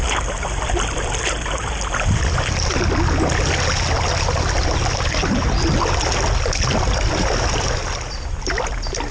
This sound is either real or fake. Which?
real